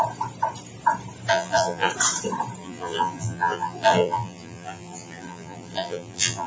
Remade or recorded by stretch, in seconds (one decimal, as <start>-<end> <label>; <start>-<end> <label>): 0.0-1.3 recorded; 1.3-1.9 remade; 1.9-2.6 recorded; 2.6-6.5 remade